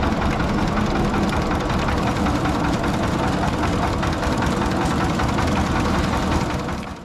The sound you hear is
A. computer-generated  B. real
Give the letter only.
B